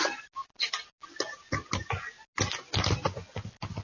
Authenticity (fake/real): real